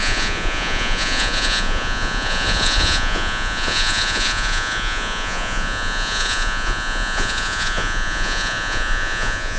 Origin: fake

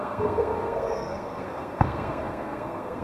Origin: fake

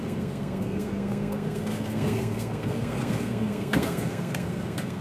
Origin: fake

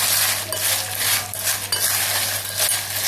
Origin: real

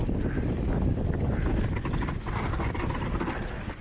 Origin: real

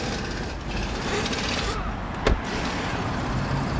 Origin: real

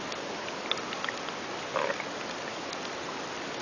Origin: real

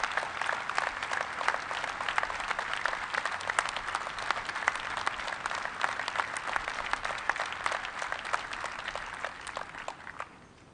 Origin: real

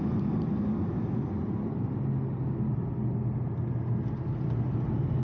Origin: real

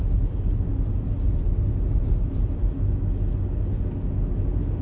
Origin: real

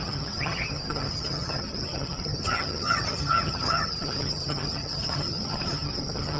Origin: fake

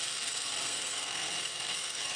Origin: fake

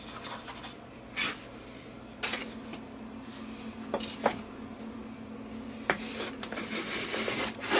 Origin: real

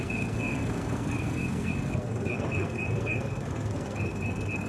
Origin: fake